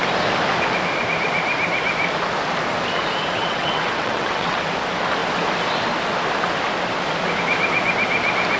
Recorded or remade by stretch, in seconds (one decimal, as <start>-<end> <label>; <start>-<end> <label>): 0.0-3.4 recorded; 3.4-4.7 remade; 4.7-8.6 recorded